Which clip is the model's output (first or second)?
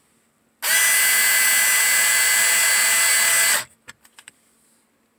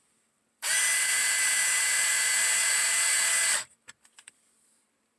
second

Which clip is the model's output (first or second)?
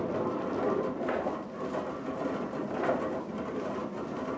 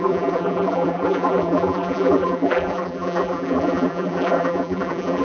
second